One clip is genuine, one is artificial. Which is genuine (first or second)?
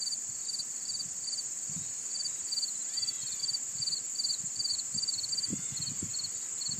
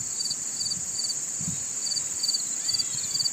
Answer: first